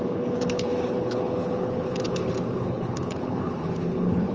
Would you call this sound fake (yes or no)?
yes